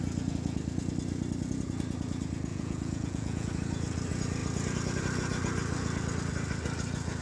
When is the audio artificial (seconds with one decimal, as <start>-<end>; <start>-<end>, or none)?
2.5-3.5